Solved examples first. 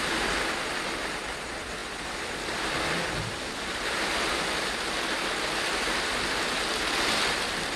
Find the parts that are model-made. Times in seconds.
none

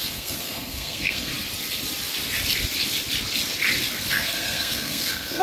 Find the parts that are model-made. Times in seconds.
0.0-1.3 (codec, SNAC); 4.1-5.4

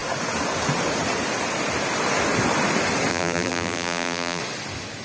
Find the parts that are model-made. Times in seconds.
3.1-4.4 (vocoder, BigVGAN v2)

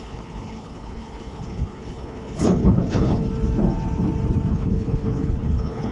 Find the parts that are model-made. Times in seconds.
0.0-3.2 (codec, HILCodec); 4.5-5.9

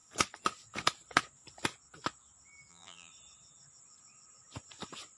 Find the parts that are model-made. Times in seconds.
2.7-3.1 (vocoder, BigVGAN v2)